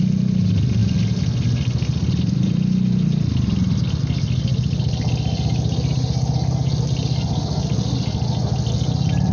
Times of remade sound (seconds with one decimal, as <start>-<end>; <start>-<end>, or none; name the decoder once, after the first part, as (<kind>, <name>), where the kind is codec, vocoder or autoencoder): none